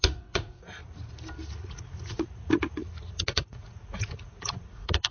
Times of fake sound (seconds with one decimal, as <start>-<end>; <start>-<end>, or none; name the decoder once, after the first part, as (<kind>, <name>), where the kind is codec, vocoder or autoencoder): 0.0-0.8 (vocoder, Vocos); 1.5-5.1

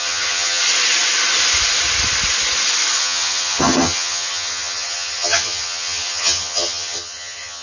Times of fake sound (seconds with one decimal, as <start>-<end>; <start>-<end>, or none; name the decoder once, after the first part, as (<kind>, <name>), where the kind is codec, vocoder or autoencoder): 0.0-0.6 (vocoder, HiFi-GAN); 3.0-7.6

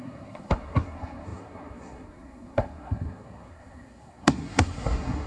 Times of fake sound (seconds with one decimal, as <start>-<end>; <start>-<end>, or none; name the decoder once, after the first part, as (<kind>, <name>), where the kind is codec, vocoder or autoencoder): 0.0-5.3 (codec, SNAC)

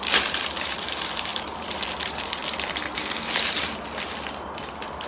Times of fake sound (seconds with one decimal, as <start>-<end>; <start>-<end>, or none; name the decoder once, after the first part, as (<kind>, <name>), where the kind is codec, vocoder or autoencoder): 0.0-1.3 (vocoder, BigVGAN v2); 3.4-5.1

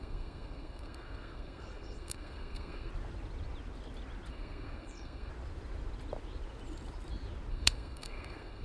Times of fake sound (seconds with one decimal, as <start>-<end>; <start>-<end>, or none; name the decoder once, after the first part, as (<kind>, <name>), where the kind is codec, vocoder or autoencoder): 0.0-2.9 (codec, SNAC); 4.3-5.3; 7.5-8.6

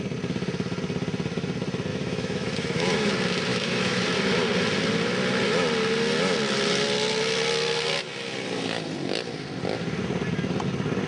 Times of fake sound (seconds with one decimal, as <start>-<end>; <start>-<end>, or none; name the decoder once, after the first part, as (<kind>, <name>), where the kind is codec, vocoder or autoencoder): 1.9-3.1 (autoencoder, DAC-VAE); 3.5-4.0

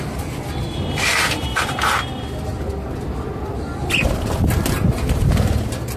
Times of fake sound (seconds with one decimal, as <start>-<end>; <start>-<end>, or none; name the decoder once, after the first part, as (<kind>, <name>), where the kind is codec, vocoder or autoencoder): none

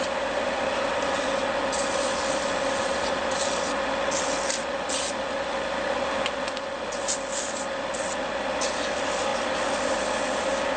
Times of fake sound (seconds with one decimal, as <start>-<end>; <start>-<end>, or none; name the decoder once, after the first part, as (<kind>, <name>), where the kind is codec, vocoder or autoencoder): none